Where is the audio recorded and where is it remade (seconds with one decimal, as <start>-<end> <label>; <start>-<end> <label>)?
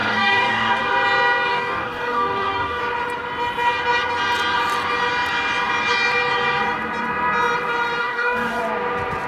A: 0.0-0.8 remade; 0.8-1.5 recorded; 1.5-2.8 remade; 2.8-8.0 recorded; 8.0-8.6 remade; 8.6-9.3 recorded